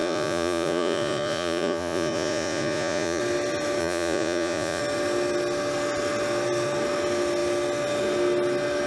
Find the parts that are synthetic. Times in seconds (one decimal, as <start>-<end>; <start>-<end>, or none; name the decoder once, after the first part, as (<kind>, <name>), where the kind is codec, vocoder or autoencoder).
0.0-3.2 (vocoder, Vocos); 3.8-4.8